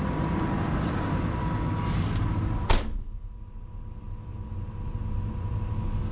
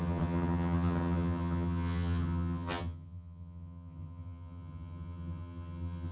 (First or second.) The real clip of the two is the first